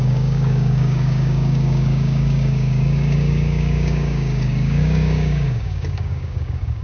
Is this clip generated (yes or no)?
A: yes